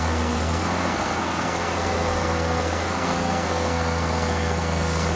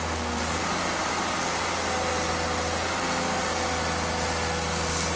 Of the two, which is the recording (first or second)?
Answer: second